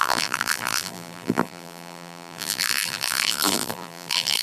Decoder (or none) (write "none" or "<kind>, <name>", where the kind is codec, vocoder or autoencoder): vocoder, BigVGAN v2